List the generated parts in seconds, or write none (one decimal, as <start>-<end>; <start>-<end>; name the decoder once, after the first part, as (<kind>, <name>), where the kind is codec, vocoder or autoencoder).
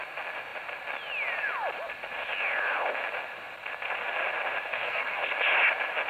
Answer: 4.7-5.2 (codec, SNAC)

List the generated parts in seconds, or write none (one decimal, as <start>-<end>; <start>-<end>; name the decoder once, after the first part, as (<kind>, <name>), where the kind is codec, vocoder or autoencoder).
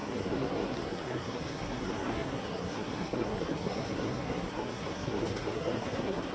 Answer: 0.0-6.3 (codec, SNAC)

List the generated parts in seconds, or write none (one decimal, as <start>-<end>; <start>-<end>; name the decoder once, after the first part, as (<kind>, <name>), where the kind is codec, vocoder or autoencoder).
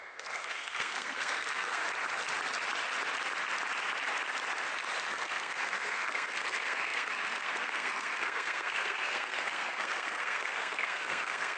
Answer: 0.0-1.8 (codec, SNAC); 5.1-11.6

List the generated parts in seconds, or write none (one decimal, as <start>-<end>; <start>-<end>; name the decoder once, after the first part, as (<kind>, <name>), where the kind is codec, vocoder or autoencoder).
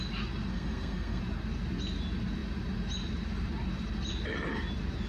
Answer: 0.5-1.2 (codec, SNAC)